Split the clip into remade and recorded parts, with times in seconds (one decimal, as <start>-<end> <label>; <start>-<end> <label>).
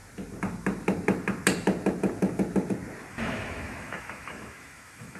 0.0-3.1 recorded; 3.1-5.2 remade